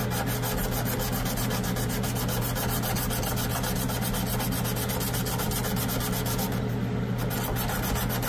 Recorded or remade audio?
recorded